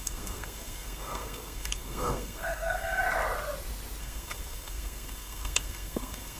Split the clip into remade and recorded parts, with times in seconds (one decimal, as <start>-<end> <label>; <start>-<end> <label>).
0.0-3.0 remade; 3.0-4.0 recorded; 4.0-6.4 remade

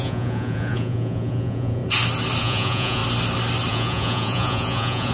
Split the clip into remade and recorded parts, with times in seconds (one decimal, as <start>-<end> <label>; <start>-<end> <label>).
0.0-1.8 remade; 1.8-2.4 recorded; 2.4-3.0 remade; 3.0-3.7 recorded; 3.7-5.1 remade

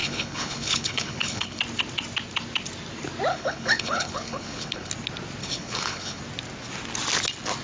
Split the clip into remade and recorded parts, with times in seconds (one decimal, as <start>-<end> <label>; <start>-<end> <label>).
0.0-1.6 remade; 1.6-3.3 recorded; 3.3-4.9 remade; 4.9-5.4 recorded; 5.4-6.2 remade; 6.2-7.6 recorded

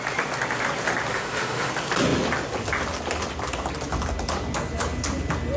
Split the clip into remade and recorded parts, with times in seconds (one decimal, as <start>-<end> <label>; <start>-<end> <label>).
0.0-1.1 recorded; 1.1-1.7 remade; 1.7-5.6 recorded

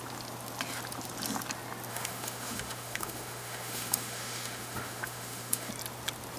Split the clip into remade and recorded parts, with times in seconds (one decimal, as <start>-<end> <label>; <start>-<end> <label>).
0.0-1.9 recorded; 1.9-5.7 remade; 5.7-6.4 recorded

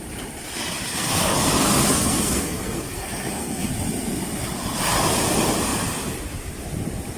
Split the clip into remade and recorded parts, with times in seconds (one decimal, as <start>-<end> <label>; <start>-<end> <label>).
0.0-0.9 recorded; 0.9-3.7 remade; 3.7-7.2 recorded